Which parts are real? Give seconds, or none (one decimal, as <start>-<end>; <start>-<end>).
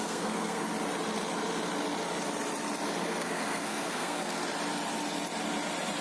0.7-3.0; 4.4-6.0